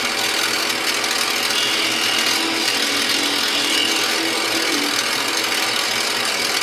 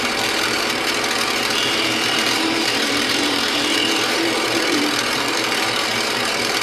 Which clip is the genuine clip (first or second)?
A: first